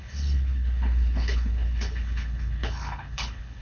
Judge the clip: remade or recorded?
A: remade